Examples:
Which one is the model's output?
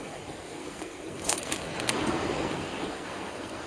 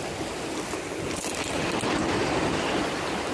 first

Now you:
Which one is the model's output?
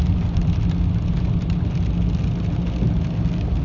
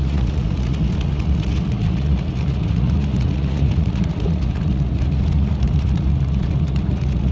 second